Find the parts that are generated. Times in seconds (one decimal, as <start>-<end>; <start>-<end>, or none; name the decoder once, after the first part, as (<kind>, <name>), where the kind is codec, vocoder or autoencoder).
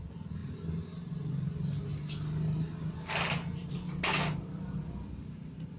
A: none